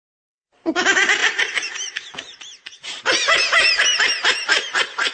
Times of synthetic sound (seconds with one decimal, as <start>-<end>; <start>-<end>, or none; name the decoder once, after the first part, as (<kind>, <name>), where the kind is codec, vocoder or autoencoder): 0.0-5.1 (vocoder, BigVGAN v2)